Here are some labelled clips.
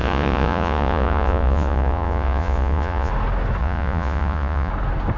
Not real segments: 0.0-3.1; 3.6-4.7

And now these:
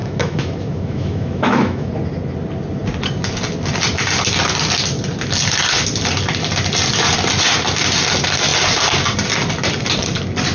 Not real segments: 0.0-1.9

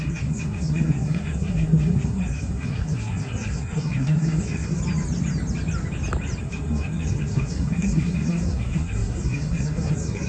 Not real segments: 0.0-4.8; 6.4-10.3

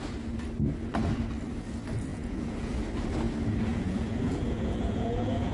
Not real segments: 2.1-2.8; 3.7-5.5

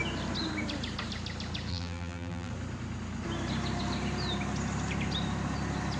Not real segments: 1.7-2.5

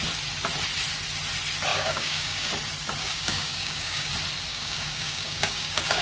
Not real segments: 1.7-2.5; 3.0-4.1; 4.5-6.0

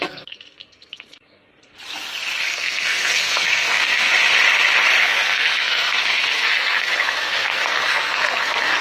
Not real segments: 0.0-1.5; 2.5-4.1; 5.0-8.8